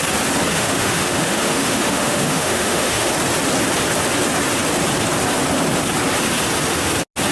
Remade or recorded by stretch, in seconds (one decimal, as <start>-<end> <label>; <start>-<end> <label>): 0.0-0.5 recorded; 0.5-3.1 remade; 3.1-7.3 recorded